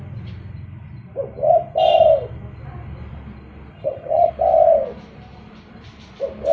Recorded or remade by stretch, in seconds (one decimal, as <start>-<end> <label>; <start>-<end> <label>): 0.0-3.7 recorded; 3.7-4.3 remade; 4.3-6.5 recorded